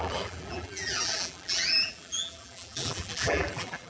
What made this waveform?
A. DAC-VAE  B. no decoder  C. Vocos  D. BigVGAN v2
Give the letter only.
D